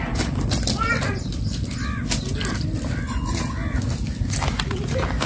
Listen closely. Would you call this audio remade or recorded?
recorded